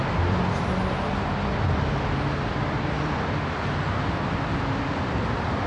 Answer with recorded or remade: recorded